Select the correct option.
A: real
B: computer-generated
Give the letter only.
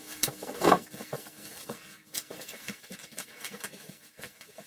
B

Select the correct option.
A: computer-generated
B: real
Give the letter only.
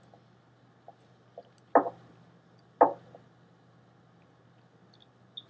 B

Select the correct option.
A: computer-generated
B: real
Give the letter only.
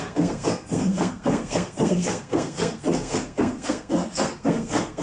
A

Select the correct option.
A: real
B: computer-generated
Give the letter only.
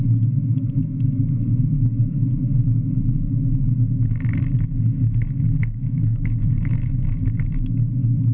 B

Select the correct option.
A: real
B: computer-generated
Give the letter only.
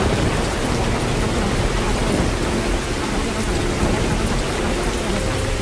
A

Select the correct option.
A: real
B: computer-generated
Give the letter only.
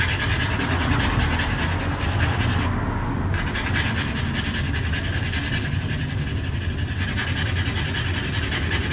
A